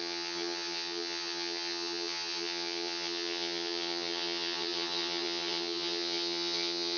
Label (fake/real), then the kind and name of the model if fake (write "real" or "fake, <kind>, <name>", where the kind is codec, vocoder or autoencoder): fake, vocoder, HiFi-GAN